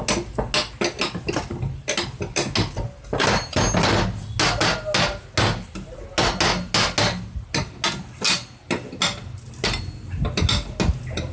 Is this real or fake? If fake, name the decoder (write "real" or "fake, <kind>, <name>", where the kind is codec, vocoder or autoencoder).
real